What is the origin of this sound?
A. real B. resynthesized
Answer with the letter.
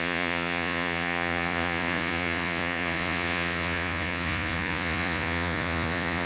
B